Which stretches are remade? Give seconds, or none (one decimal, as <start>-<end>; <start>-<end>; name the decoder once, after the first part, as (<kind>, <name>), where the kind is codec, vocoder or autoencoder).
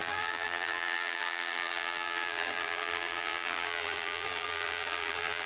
0.0-5.5 (vocoder, BigVGAN v2)